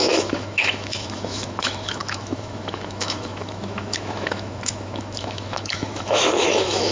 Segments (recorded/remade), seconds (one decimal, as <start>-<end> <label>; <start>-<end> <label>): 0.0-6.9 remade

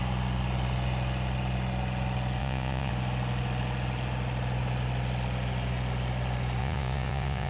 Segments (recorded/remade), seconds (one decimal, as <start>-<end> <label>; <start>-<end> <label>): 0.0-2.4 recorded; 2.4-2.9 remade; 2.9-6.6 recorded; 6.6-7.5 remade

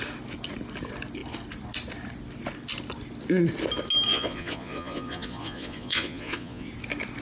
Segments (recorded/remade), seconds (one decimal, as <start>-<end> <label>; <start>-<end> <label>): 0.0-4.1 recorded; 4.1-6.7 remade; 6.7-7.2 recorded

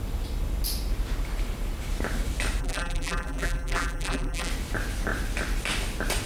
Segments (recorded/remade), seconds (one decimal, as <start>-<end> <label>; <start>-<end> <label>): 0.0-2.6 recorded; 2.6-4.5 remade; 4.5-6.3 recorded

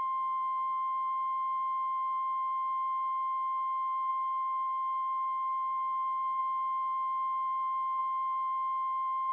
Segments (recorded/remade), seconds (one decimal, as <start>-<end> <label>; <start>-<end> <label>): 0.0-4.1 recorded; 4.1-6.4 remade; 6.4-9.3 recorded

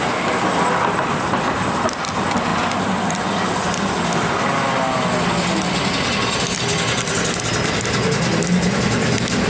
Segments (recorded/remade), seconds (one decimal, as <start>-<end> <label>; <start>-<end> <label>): 0.0-9.5 recorded

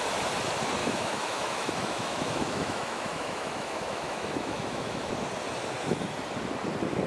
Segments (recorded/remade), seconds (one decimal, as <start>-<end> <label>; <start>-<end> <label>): 0.0-0.8 recorded; 0.8-5.1 remade; 5.1-7.1 recorded

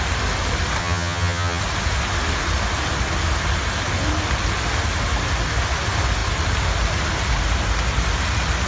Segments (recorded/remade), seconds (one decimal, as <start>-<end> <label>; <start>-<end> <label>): 0.0-0.8 recorded; 0.8-1.6 remade; 1.6-8.7 recorded